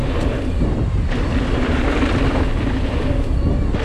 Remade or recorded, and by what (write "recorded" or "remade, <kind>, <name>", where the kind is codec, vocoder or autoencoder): recorded